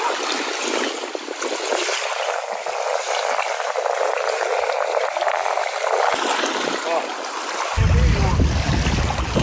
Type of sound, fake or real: real